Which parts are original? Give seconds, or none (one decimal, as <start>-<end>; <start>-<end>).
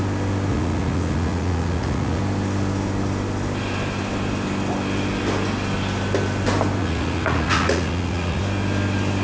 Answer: 0.0-0.5; 2.2-6.8; 8.4-9.2